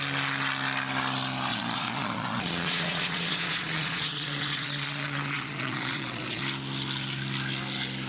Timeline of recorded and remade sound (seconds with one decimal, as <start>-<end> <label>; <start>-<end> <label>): 0.0-1.5 recorded; 1.5-6.4 remade; 6.4-8.1 recorded